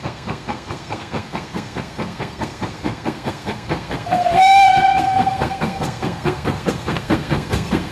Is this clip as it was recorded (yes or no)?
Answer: no